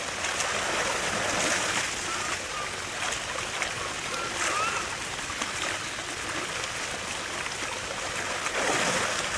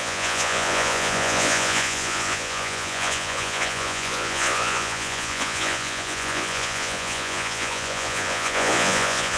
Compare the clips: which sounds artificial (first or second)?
second